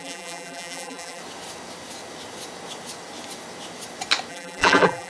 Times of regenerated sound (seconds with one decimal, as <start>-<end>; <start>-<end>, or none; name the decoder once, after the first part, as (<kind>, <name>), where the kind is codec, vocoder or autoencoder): 0.0-1.2 (vocoder, BigVGAN v2); 4.3-5.1